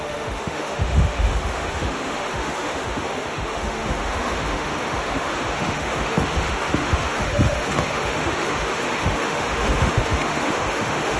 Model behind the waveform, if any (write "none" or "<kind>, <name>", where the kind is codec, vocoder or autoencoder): autoencoder, DAC-VAE